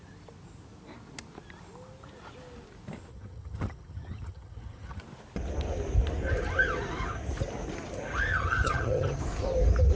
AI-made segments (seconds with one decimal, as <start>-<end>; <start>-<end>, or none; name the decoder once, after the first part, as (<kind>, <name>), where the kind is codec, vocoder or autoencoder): 3.1-5.0 (vocoder, HiFi-GAN); 8.3-9.2